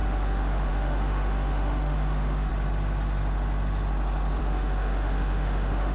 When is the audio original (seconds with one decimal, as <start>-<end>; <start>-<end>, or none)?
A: 2.5-4.4